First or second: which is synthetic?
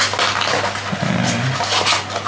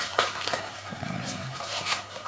second